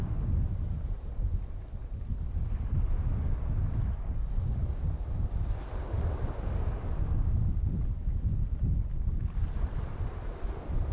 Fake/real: real